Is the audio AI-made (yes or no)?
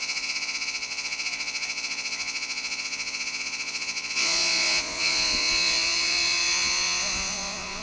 yes